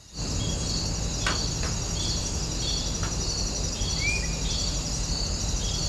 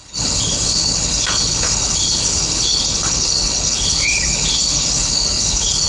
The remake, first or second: second